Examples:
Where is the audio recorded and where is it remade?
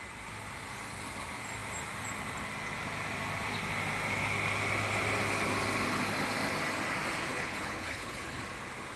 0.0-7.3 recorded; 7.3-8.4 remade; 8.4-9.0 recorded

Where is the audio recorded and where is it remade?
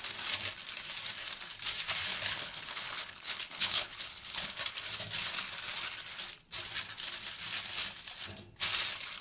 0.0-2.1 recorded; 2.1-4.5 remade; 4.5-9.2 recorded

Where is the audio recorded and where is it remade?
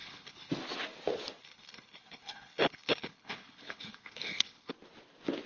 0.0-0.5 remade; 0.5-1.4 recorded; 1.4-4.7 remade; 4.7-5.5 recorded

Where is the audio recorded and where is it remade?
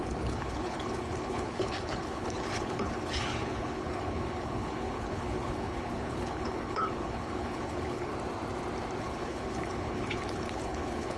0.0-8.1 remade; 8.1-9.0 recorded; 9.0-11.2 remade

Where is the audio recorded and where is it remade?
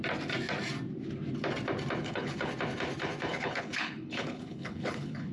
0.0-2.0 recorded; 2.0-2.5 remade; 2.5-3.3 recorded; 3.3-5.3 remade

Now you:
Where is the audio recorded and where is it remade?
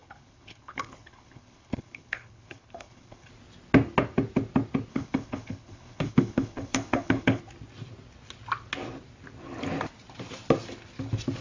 0.0-3.3 remade; 3.3-4.9 recorded; 4.9-7.4 remade; 7.4-11.4 recorded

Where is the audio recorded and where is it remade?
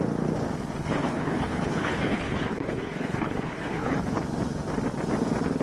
0.0-0.8 recorded; 0.8-4.2 remade; 4.2-5.6 recorded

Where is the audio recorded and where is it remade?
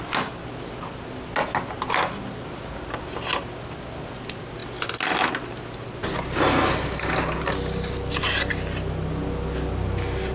0.0-10.3 recorded